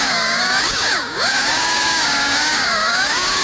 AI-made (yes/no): yes